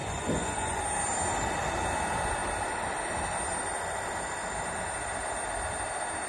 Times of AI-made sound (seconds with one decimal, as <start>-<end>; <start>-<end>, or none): 0.0-0.8